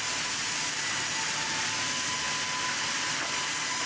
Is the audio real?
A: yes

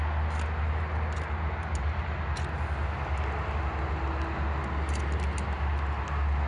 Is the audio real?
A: yes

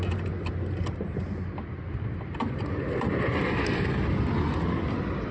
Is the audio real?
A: yes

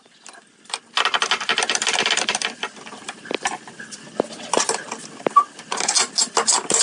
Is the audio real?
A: yes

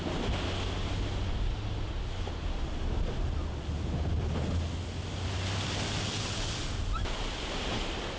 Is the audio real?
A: yes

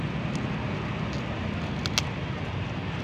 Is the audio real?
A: yes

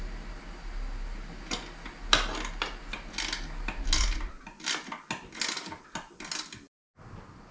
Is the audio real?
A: yes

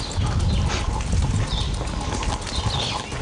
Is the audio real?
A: yes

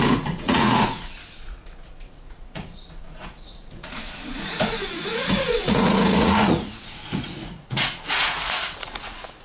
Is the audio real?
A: no